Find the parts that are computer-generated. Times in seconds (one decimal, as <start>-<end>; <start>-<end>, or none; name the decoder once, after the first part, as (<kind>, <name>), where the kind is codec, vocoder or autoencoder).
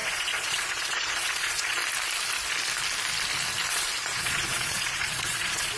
0.0-1.8 (vocoder, Vocos); 3.7-5.8